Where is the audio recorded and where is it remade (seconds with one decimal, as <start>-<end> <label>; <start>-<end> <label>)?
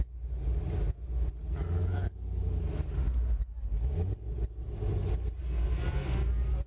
0.0-6.7 recorded